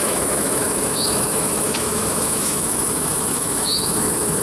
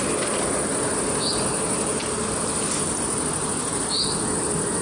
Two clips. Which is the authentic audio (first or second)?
second